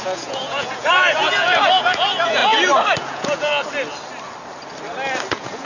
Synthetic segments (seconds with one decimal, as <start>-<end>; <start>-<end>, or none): 0.0-2.4; 3.0-3.5; 5.3-5.7